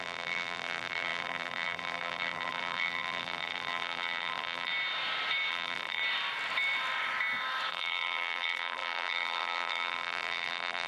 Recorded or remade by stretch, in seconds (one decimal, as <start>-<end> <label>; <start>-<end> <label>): 0.0-4.7 remade; 4.7-5.5 recorded; 5.5-6.0 remade; 6.0-7.7 recorded; 7.7-10.9 remade